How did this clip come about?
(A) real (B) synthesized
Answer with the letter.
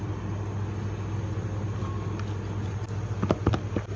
A